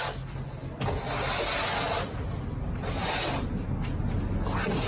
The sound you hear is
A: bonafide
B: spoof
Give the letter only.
A